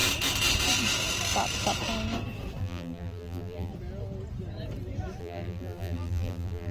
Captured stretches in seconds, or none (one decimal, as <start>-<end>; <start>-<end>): 0.0-2.6; 3.7-5.2

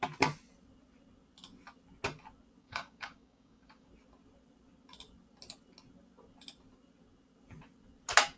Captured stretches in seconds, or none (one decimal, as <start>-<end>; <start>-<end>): 0.0-2.6; 3.9-8.4

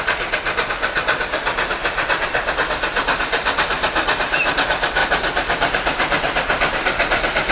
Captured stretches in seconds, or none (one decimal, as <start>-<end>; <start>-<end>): 0.0-1.8; 2.5-5.0

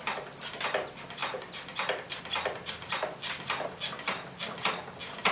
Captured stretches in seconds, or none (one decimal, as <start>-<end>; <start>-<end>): 0.0-5.3

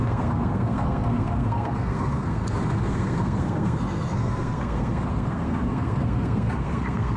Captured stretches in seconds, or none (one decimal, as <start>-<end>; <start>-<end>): none

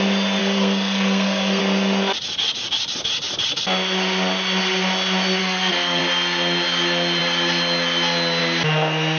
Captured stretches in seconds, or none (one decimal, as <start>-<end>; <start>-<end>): 0.0-0.4; 1.6-5.4; 6.0-9.2

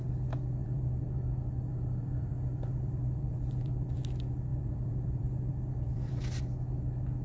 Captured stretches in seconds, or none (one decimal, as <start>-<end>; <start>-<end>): 0.0-0.6; 1.2-1.7; 4.0-4.5; 6.1-7.2

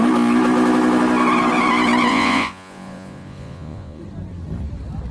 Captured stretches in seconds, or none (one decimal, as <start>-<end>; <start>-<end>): 0.0-2.1; 4.0-5.1